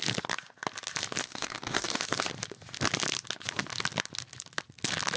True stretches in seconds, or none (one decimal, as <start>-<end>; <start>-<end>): 0.0-1.2; 2.0-5.2